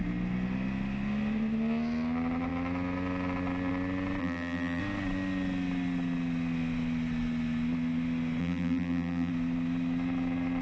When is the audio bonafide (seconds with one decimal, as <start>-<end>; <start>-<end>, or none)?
0.0-4.2; 4.8-8.4; 9.3-10.6